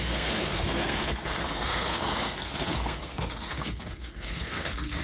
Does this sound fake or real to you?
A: fake